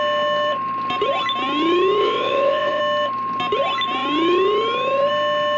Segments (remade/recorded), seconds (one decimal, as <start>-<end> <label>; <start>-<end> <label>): 0.0-2.0 recorded; 2.0-2.8 remade; 2.8-5.6 recorded